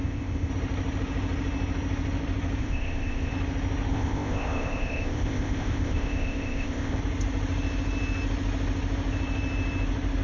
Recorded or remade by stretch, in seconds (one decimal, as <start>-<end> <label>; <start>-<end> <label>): 0.0-0.5 remade; 0.5-2.6 recorded; 2.6-3.3 remade; 3.3-3.9 recorded; 3.9-7.0 remade; 7.0-10.2 recorded